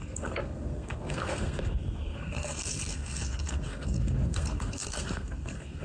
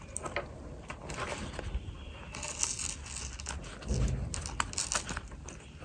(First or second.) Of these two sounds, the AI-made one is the first